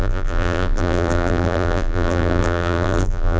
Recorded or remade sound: remade